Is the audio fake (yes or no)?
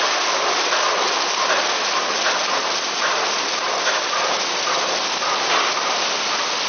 no